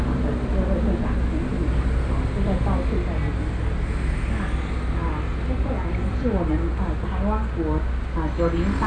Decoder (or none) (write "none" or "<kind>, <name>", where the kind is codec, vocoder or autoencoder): none